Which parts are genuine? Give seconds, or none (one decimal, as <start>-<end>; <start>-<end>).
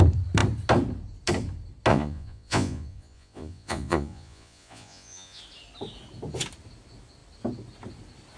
0.0-1.9; 5.4-8.4